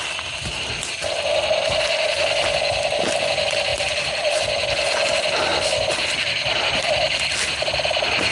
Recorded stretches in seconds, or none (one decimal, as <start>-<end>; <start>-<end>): 0.0-8.3